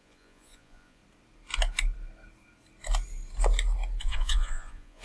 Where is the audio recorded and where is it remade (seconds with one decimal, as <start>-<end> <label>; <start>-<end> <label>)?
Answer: 0.0-1.0 remade; 1.0-4.0 recorded; 4.0-5.0 remade